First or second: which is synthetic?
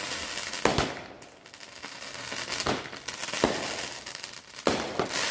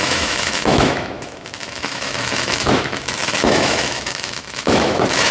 second